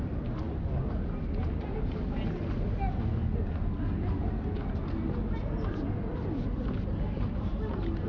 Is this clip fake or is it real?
real